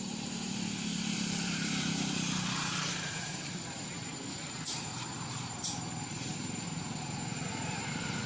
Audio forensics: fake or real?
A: fake